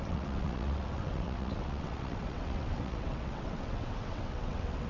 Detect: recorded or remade remade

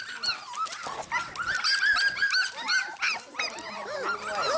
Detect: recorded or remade recorded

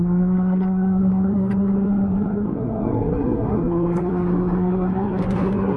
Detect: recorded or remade remade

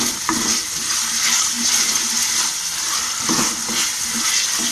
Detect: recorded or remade recorded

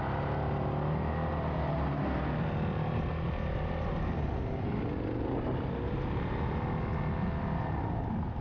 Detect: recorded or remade recorded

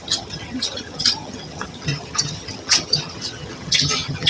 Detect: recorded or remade remade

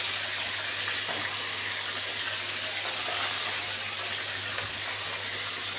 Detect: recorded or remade recorded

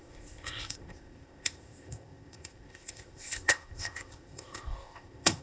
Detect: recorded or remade remade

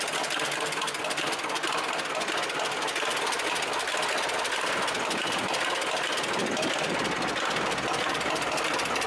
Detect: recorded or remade recorded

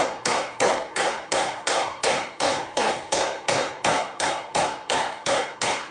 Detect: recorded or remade remade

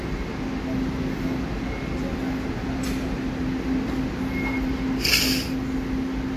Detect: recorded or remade recorded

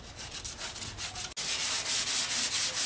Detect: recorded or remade recorded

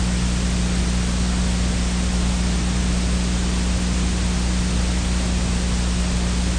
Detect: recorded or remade recorded